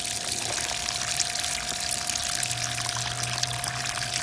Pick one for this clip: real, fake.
real